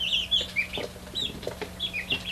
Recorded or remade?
recorded